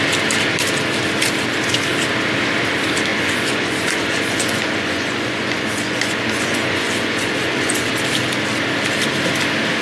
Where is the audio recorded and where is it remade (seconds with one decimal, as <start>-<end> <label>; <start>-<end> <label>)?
0.0-3.1 recorded; 3.1-7.9 remade; 7.9-9.8 recorded